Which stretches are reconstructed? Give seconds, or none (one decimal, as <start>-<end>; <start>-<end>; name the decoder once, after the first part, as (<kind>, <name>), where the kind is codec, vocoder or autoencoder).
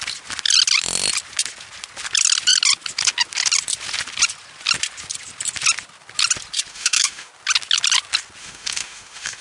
6.7-7.3 (autoencoder, DAC-VAE); 8.4-9.4